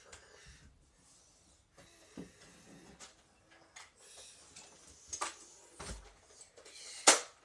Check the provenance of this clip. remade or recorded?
recorded